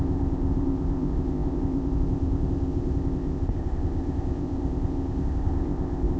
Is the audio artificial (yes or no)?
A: yes